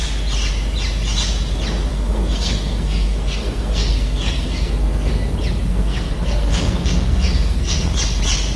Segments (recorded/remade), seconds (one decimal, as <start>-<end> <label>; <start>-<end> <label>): 0.0-1.9 recorded; 1.9-5.1 remade; 5.1-5.7 recorded; 5.7-7.9 remade; 7.9-8.6 recorded